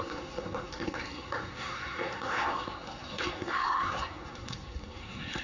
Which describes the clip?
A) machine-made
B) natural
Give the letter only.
A